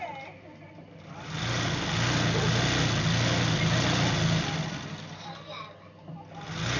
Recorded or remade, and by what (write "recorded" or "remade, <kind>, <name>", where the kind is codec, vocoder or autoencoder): recorded